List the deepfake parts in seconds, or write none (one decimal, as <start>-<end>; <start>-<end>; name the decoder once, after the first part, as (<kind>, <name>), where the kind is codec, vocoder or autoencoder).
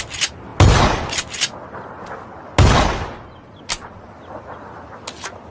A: none